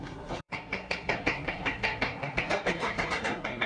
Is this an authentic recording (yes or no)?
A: no